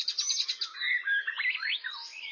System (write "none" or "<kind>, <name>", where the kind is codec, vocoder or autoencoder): none